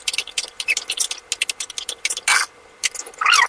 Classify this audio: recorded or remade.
recorded